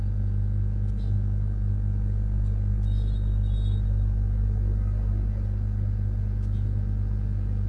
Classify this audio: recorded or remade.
recorded